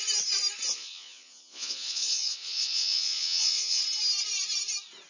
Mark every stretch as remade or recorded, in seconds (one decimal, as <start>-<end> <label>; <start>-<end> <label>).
0.0-0.7 recorded; 0.7-3.8 remade; 3.8-5.1 recorded